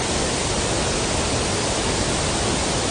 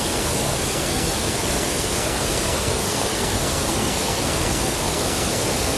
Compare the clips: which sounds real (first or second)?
first